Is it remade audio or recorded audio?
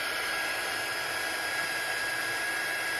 remade